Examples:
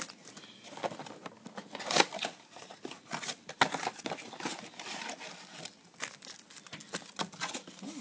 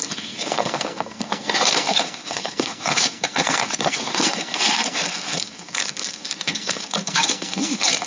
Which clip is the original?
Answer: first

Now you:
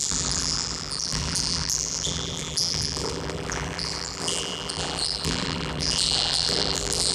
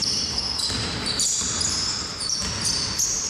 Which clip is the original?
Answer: second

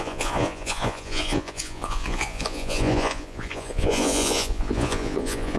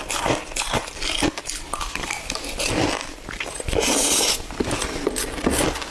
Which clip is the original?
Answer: second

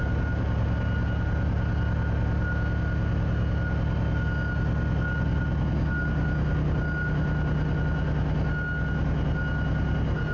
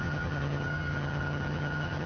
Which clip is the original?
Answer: first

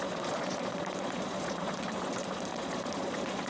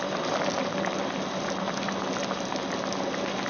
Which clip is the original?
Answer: second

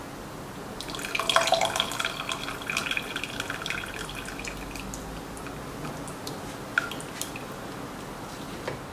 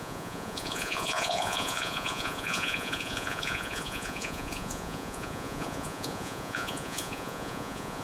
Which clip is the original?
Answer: first